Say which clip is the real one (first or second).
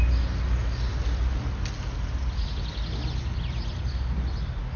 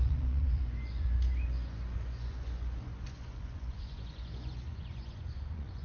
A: first